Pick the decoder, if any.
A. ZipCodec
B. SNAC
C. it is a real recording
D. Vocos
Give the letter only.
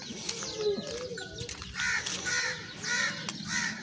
C